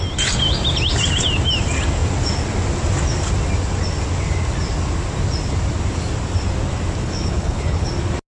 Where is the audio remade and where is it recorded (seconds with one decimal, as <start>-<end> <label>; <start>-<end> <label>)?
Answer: 0.0-7.0 recorded; 7.0-7.9 remade; 7.9-8.3 recorded